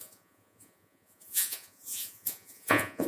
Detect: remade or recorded remade